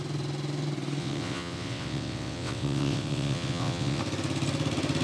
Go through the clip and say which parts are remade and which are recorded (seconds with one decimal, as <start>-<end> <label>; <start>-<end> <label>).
0.0-1.0 recorded; 1.0-4.0 remade; 4.0-5.0 recorded